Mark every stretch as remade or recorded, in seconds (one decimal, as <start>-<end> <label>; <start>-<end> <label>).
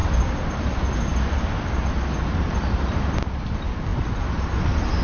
0.0-0.8 remade; 0.8-3.9 recorded; 3.9-5.0 remade